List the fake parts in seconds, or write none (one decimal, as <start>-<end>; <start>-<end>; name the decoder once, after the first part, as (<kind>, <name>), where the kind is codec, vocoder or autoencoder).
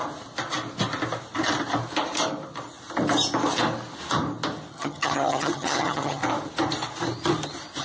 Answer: 4.7-6.2 (vocoder, HiFi-GAN)